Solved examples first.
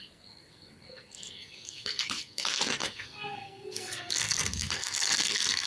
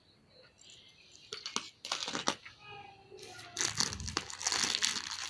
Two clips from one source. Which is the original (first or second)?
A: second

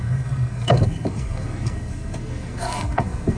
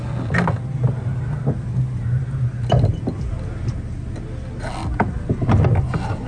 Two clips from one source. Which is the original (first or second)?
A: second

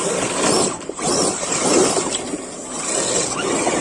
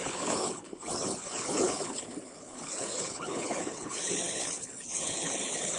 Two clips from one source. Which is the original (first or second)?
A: first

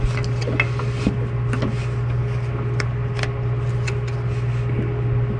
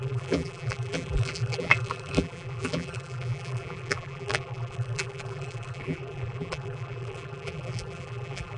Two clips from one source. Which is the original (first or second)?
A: first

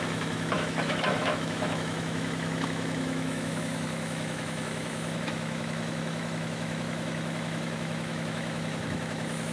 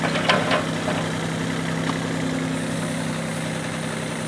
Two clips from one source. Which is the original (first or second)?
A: second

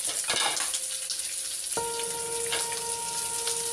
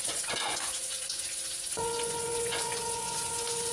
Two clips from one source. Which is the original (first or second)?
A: first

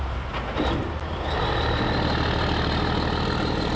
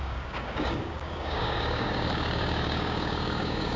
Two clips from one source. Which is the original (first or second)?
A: first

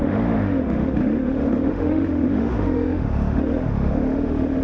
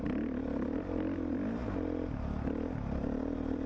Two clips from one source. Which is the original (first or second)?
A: second